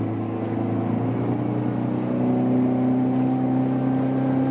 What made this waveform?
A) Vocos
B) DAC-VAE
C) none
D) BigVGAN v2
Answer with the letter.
C